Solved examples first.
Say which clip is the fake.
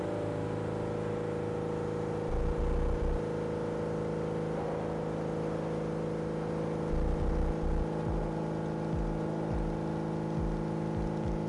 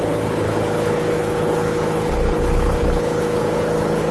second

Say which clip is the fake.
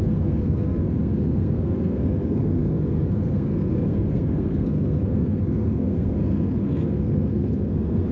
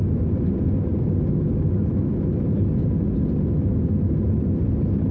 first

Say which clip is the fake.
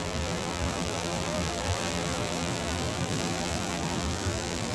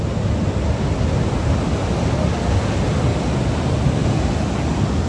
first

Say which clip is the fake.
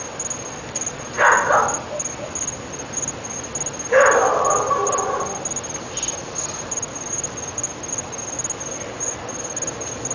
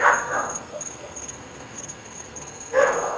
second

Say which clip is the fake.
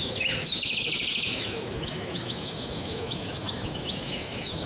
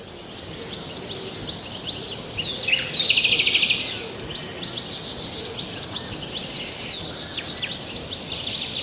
first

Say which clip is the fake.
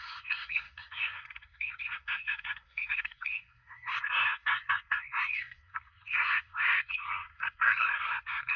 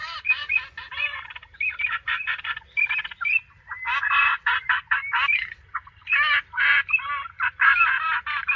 first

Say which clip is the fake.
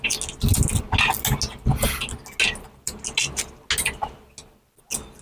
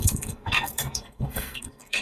second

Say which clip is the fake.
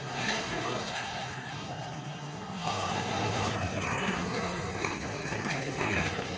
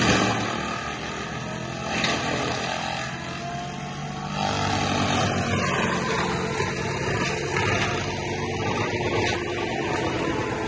first